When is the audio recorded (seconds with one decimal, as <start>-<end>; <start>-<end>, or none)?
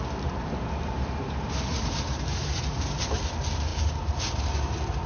0.0-1.7; 3.2-3.7; 4.2-5.1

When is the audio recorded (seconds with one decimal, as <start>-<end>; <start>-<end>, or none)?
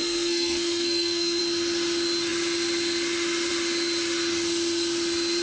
1.4-5.4